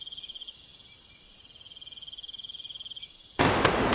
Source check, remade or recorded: recorded